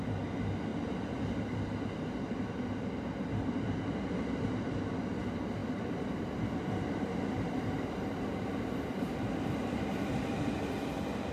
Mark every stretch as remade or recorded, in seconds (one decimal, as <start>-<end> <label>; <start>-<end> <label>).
0.0-5.6 recorded; 5.6-9.3 remade; 9.3-11.3 recorded